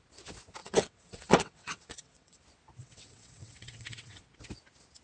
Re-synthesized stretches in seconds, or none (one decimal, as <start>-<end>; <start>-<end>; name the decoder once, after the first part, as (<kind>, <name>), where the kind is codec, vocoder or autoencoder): 0.6-2.4 (vocoder, WaveNeXt); 2.8-4.2